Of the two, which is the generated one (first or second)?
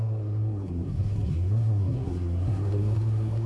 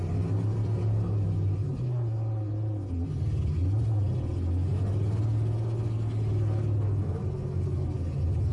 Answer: first